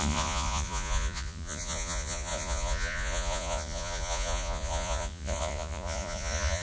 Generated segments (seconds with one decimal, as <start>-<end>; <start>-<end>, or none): 0.0-6.6